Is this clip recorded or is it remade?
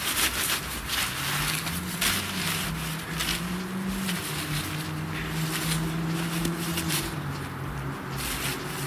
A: recorded